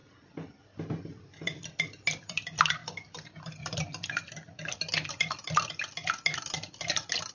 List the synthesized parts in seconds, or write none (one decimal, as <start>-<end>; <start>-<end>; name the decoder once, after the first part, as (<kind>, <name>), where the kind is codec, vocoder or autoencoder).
none